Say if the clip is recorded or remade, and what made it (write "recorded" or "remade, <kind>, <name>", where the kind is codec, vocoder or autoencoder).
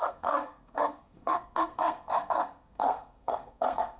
remade, codec, SNAC